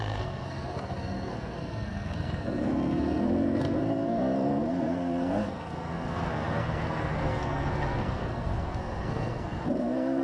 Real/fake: fake